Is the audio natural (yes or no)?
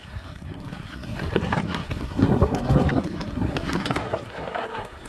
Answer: no